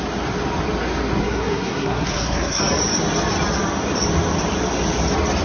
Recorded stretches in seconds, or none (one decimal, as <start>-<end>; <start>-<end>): 0.0-1.2; 2.6-5.4